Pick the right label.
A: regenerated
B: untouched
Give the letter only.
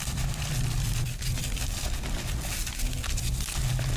B